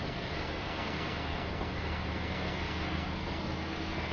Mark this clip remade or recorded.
remade